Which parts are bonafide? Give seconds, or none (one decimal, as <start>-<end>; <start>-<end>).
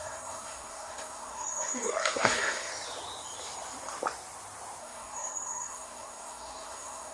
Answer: 2.7-4.8